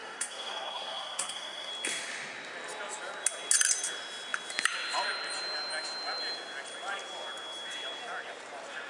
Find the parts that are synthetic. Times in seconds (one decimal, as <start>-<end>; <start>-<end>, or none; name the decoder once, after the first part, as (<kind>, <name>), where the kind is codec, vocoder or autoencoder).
0.0-1.7 (codec, SNAC)